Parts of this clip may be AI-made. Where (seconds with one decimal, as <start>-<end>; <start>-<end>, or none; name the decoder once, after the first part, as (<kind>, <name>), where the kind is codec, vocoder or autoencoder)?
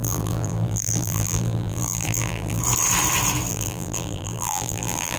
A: 0.0-2.6 (vocoder, BigVGAN v2); 3.5-5.2